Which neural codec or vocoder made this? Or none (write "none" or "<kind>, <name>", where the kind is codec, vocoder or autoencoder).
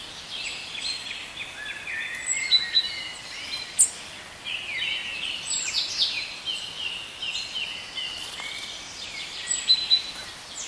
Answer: none